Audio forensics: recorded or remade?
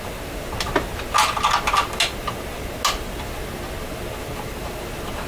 recorded